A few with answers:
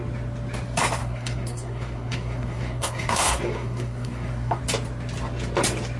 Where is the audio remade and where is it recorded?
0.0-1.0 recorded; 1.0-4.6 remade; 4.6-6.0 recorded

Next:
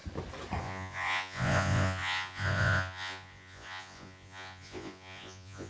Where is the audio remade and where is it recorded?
0.0-0.6 recorded; 0.6-5.7 remade

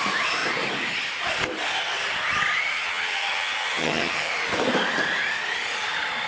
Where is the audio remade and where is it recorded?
0.0-2.7 recorded; 2.7-4.3 remade; 4.3-6.3 recorded

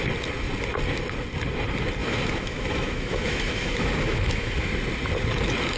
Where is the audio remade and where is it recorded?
0.0-2.0 recorded; 2.0-4.7 remade; 4.7-5.8 recorded

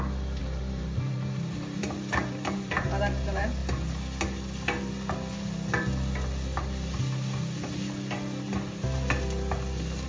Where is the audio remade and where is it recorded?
0.0-0.4 recorded; 0.4-2.9 remade; 2.9-10.1 recorded

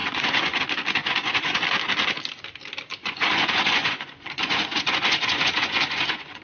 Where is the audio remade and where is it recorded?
0.0-0.6 remade; 0.6-1.0 recorded; 1.0-1.6 remade; 1.6-3.0 recorded; 3.0-6.4 remade